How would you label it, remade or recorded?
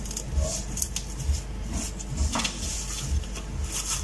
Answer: recorded